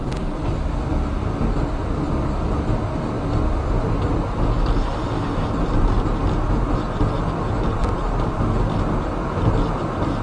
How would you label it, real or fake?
real